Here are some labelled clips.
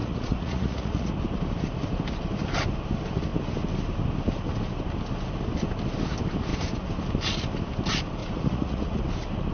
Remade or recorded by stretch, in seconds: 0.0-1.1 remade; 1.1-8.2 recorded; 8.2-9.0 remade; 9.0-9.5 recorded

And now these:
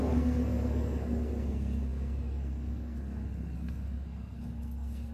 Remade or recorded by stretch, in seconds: 0.0-5.1 remade